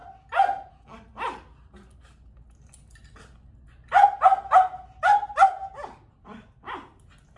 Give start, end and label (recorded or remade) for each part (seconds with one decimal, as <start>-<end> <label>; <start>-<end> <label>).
0.0-7.4 recorded